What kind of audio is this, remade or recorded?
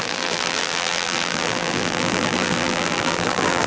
remade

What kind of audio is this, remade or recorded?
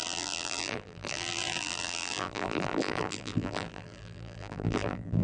remade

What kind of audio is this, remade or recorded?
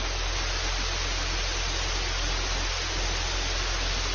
recorded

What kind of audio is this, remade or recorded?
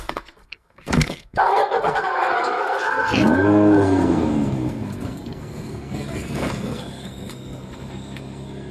remade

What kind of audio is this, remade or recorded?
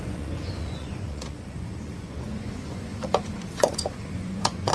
remade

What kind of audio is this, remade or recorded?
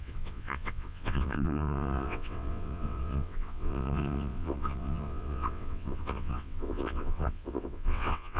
remade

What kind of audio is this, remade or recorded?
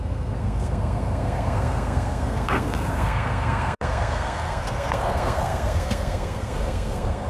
remade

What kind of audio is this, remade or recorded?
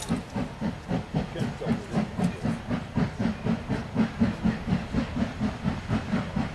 recorded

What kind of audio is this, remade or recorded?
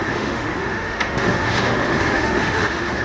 remade